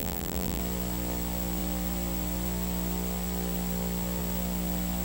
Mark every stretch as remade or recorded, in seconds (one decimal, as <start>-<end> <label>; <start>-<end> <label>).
0.0-0.6 remade; 0.6-5.0 recorded